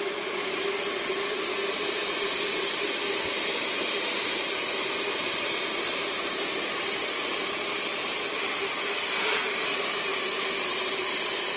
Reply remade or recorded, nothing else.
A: remade